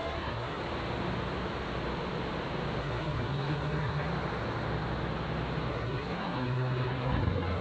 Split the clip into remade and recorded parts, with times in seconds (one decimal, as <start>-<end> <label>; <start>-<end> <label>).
0.0-0.6 remade; 0.6-2.8 recorded; 2.8-4.1 remade; 4.1-5.7 recorded; 5.7-7.6 remade